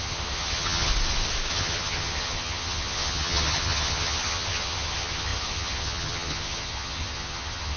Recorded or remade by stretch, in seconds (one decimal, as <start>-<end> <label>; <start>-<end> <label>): 0.0-0.9 remade; 0.9-1.5 recorded; 1.5-7.8 remade